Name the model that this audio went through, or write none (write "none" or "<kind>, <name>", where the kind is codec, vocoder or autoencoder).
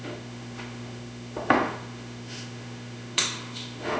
autoencoder, DAC-VAE